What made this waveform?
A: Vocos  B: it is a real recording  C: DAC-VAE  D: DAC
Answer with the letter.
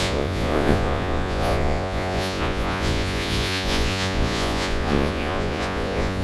A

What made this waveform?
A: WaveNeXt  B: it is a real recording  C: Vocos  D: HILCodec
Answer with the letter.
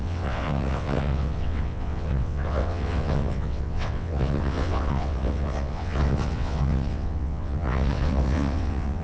A